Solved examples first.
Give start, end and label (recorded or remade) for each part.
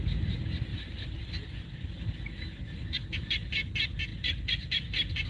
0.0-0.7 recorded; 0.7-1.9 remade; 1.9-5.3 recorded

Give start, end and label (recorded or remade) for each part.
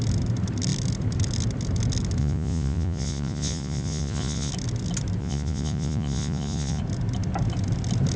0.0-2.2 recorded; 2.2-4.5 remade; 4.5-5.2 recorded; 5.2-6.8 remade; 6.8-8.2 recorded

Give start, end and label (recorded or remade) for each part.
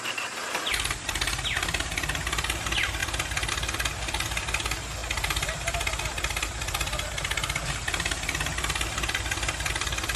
0.0-10.2 recorded